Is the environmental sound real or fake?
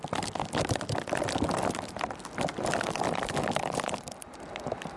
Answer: real